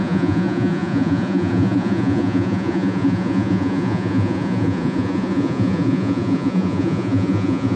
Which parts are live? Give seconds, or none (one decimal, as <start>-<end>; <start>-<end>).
none